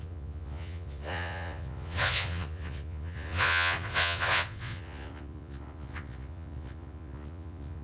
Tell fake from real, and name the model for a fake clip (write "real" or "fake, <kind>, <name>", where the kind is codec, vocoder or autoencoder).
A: fake, vocoder, Vocos